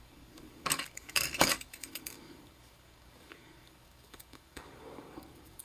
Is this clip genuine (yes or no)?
no